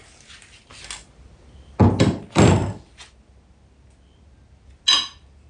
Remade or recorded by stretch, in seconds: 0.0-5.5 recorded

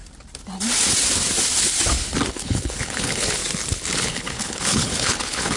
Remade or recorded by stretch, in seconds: 0.0-2.3 recorded; 2.3-3.4 remade; 3.4-4.0 recorded; 4.0-5.6 remade